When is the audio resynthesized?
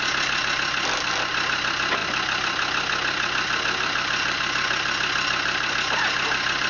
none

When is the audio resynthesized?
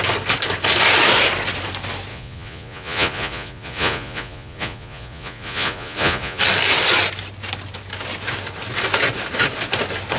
2.1-6.4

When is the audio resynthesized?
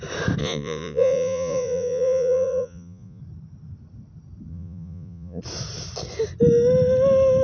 0.4-3.2; 4.5-5.4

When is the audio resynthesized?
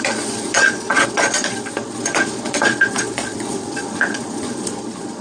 0.0-5.2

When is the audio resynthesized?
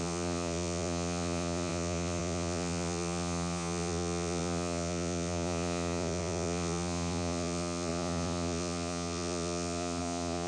0.0-10.5